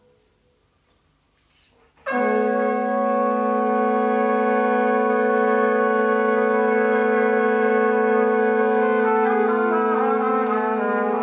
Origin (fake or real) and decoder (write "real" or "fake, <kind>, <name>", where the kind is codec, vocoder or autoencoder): real